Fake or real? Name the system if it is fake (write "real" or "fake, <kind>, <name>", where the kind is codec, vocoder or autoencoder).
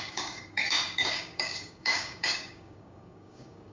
fake, codec, DAC